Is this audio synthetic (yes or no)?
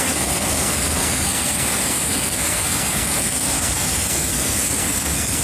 yes